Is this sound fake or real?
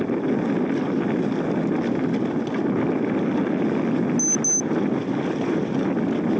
real